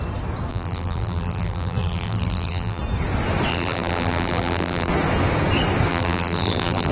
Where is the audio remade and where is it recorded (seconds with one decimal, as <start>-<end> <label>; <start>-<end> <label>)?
0.0-0.5 recorded; 0.5-2.8 remade; 2.8-3.5 recorded; 3.5-4.9 remade; 4.9-5.9 recorded; 5.9-6.9 remade